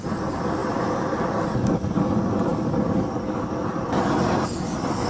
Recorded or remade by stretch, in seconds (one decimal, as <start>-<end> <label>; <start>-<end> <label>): 0.0-5.1 recorded